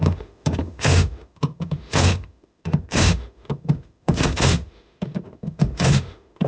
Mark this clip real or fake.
fake